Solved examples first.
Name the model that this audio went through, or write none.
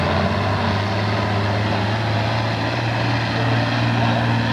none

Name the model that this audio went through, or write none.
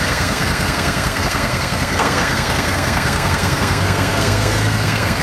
codec, SNAC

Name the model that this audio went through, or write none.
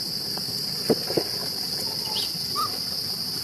none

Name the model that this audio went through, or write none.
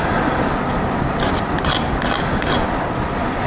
none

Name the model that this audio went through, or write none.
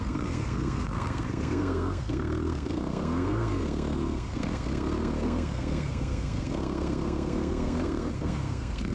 codec, SNAC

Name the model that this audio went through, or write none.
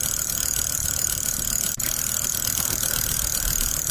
none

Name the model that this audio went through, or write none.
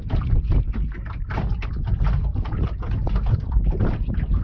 none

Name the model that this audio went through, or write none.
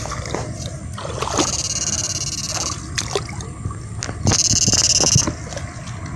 none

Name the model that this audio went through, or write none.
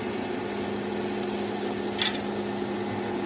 none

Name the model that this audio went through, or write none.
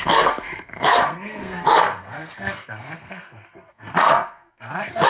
codec, SNAC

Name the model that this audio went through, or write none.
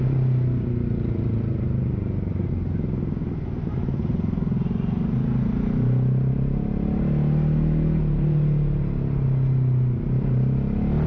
none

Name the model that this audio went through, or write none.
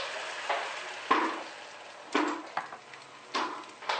none